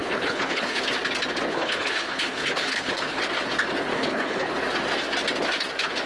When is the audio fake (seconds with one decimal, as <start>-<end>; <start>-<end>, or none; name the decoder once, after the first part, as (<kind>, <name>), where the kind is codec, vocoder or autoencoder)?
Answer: 0.0-0.8 (codec, HILCodec); 1.5-3.2; 3.9-4.5